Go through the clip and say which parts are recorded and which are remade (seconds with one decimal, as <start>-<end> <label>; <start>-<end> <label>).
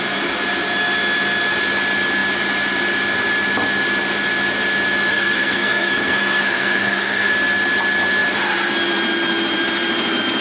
0.0-5.1 recorded; 5.1-7.3 remade; 7.3-10.4 recorded